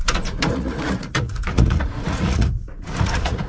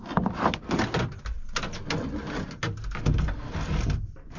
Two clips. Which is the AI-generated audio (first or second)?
first